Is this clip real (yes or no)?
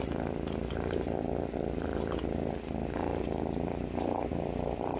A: yes